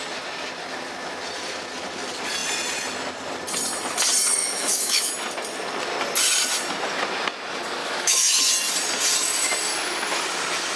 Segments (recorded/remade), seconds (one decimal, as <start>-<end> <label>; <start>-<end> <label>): 0.0-4.4 recorded; 4.4-5.1 remade; 5.1-7.8 recorded; 7.8-8.4 remade; 8.4-10.8 recorded